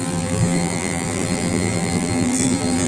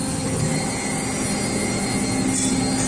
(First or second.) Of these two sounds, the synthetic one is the first